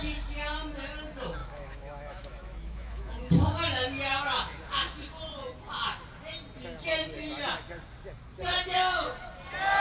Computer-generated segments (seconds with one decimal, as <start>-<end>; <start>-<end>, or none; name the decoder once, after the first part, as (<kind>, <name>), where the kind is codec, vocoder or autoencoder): 1.4-3.3 (autoencoder, DAC-VAE)